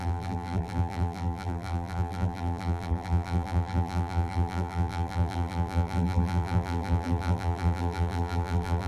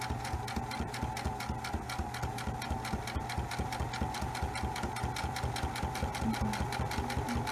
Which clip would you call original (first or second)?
second